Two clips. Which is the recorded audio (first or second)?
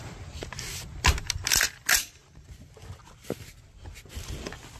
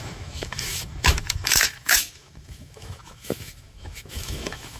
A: first